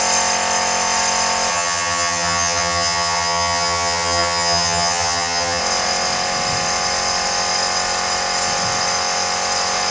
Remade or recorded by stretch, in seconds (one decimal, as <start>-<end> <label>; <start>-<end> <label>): 0.0-1.5 recorded; 1.5-5.6 remade; 5.6-9.9 recorded